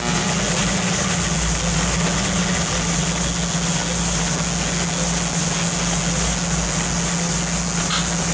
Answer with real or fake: real